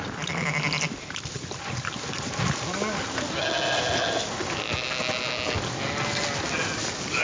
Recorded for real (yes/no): yes